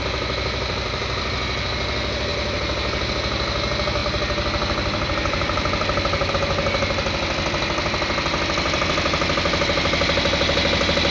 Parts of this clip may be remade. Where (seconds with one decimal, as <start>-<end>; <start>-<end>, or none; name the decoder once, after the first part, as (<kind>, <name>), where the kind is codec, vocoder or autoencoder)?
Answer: 0.0-1.7 (vocoder, BigVGAN v2); 2.3-3.1; 4.0-6.3